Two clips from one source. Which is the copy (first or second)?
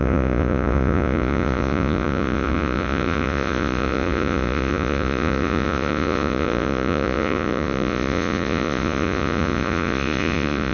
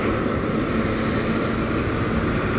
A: first